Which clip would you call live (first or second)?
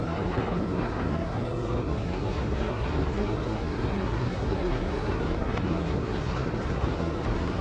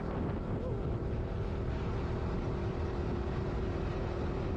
second